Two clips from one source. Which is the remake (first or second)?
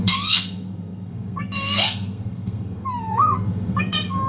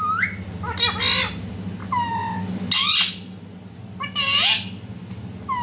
first